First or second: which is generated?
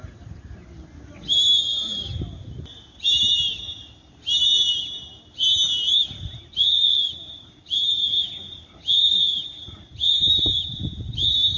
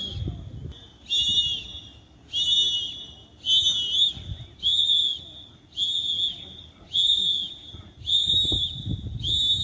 first